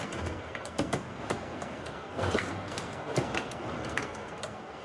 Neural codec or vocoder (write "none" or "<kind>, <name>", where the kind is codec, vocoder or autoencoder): codec, SNAC